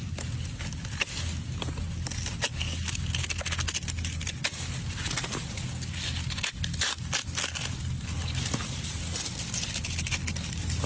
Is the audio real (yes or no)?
yes